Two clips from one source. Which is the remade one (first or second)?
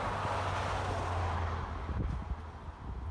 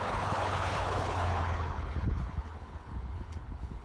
second